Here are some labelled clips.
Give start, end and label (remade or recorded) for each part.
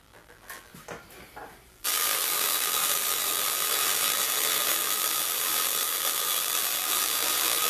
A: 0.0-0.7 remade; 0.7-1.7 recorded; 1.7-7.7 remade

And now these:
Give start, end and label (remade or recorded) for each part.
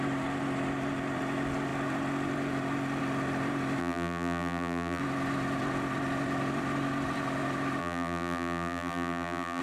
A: 0.0-3.8 recorded; 3.8-5.0 remade; 5.0-7.8 recorded; 7.8-9.6 remade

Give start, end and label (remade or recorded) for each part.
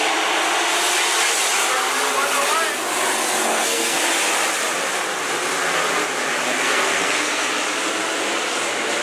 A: 0.0-3.4 recorded; 3.4-4.0 remade; 4.0-6.5 recorded; 6.5-7.5 remade; 7.5-9.0 recorded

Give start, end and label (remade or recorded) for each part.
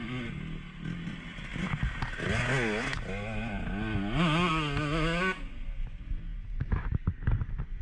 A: 0.0-7.8 recorded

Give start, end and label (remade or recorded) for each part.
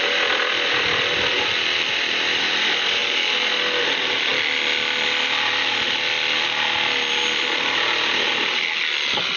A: 0.0-9.4 recorded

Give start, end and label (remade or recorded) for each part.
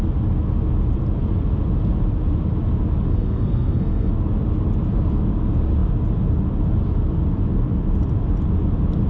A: 0.0-3.1 recorded; 3.1-4.1 remade; 4.1-9.1 recorded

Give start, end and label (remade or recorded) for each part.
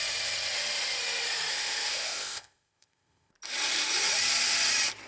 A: 0.0-1.5 recorded; 1.5-3.3 remade; 3.3-5.1 recorded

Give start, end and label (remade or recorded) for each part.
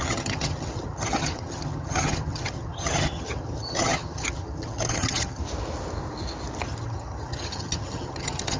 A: 0.0-5.4 remade; 5.4-6.6 recorded; 6.6-8.6 remade